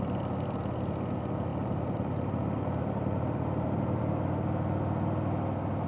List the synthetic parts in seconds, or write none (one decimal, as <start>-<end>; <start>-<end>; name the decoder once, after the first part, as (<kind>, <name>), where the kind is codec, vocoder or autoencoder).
1.5-4.0 (vocoder, BigVGAN v2)